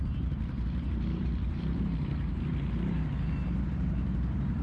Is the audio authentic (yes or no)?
no